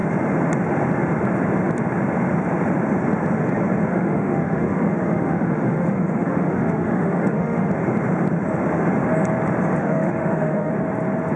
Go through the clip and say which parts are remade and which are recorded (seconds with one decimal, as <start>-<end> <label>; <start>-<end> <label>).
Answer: 0.0-3.9 recorded; 3.9-7.7 remade; 7.7-9.8 recorded; 9.8-10.7 remade; 10.7-11.4 recorded